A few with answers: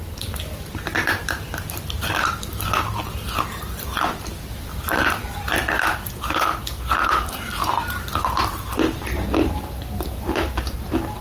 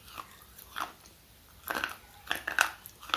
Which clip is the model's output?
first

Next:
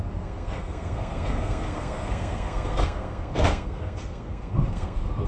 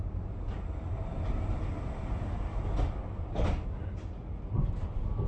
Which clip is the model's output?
first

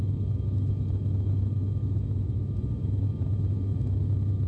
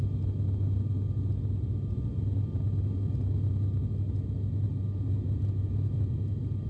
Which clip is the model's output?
first